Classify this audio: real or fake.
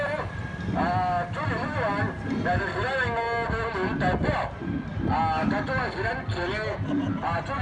real